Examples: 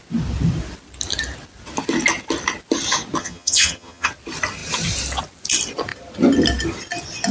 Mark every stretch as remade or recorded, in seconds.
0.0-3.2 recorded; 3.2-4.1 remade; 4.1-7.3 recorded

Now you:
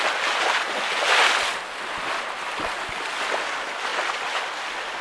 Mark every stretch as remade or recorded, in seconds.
0.0-5.0 recorded

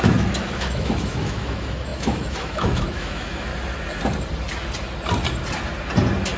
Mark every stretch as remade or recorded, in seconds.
0.0-3.5 remade; 3.5-6.4 recorded

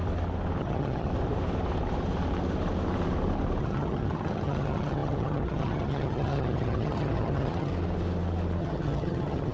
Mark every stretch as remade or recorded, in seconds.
0.0-0.6 recorded; 0.6-1.1 remade; 1.1-3.6 recorded; 3.6-7.7 remade; 7.7-8.6 recorded; 8.6-9.5 remade